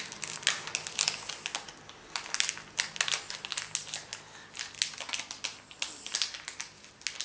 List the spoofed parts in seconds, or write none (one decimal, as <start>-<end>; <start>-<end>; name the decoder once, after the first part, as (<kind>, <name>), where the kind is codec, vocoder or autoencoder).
none